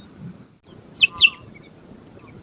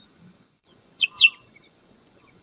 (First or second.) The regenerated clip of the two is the second